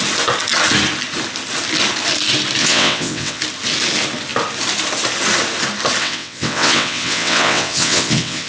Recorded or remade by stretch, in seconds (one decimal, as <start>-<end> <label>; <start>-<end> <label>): 0.0-2.6 recorded; 2.6-3.4 remade; 3.4-6.0 recorded; 6.0-8.5 remade